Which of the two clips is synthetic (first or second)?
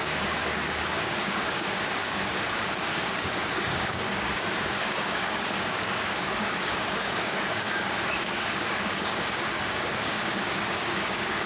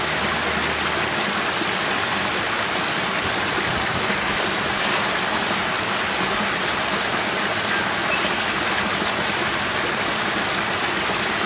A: first